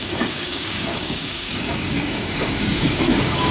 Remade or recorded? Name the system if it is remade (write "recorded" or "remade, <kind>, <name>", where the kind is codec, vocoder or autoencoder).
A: remade, codec, DAC